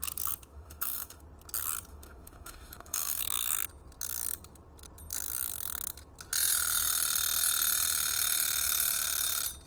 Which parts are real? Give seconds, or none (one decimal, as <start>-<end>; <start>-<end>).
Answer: 0.0-0.5; 1.2-1.9; 3.2-9.7